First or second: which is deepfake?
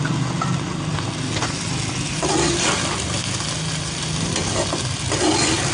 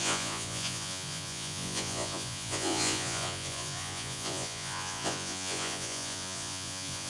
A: second